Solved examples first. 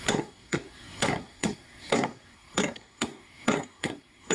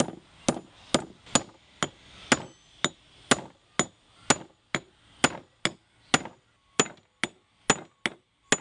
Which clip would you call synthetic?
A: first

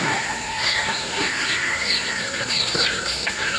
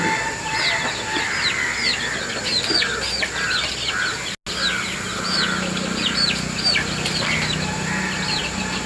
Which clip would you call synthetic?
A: first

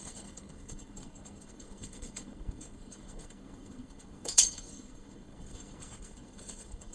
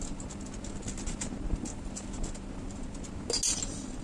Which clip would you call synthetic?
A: first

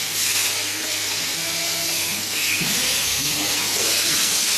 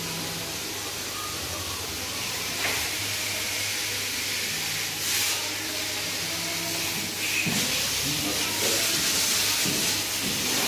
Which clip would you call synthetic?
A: first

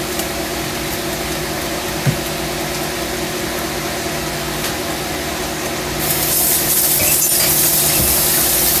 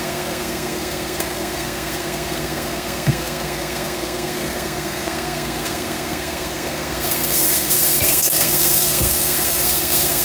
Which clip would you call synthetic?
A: second